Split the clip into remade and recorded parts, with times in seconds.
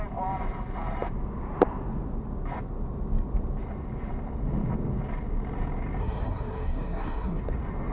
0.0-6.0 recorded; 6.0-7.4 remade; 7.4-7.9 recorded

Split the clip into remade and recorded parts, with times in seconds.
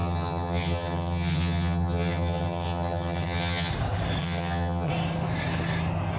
0.0-3.7 remade; 3.7-4.2 recorded; 4.2-4.9 remade; 4.9-6.2 recorded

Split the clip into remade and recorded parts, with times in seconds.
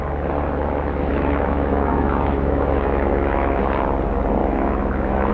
0.0-1.1 recorded; 1.1-3.6 remade; 3.6-4.4 recorded; 4.4-5.3 remade